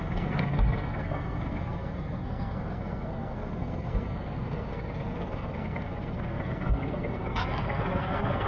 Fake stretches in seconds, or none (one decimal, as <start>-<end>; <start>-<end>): 0.0-8.5